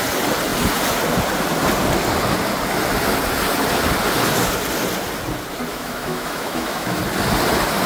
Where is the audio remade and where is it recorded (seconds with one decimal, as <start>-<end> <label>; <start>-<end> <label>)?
0.0-5.7 recorded; 5.7-7.0 remade; 7.0-7.9 recorded